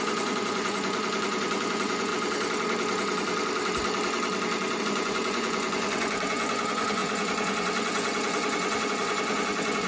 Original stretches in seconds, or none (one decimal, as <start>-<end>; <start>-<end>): 2.1-4.8